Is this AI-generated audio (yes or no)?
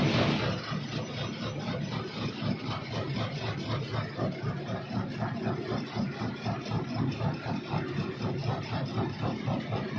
no